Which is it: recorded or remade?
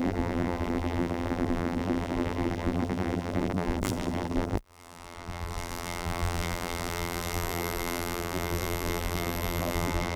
remade